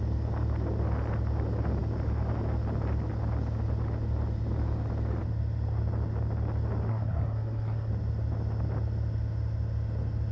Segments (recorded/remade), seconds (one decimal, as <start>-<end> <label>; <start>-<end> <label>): 0.0-6.9 recorded; 6.9-7.9 remade; 7.9-10.3 recorded